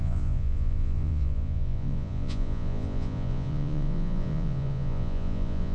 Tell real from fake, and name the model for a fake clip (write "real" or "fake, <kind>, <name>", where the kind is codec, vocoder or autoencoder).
fake, vocoder, Vocos